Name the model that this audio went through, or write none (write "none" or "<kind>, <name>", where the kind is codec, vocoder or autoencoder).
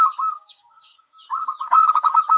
codec, DAC